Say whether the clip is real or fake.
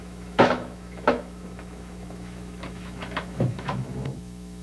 fake